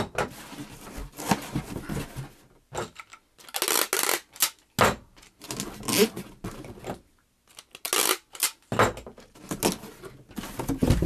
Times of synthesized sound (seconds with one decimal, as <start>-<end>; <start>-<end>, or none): none